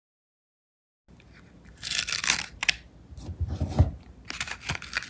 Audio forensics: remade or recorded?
recorded